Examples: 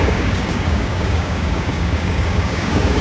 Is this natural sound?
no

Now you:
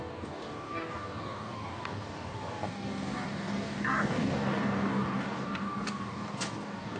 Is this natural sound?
no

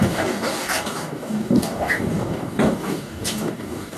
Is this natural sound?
no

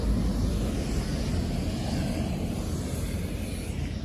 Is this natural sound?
yes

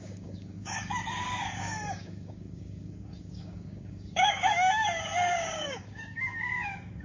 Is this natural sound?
no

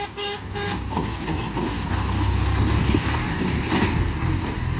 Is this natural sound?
no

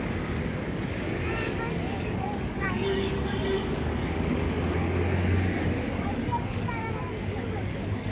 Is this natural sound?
no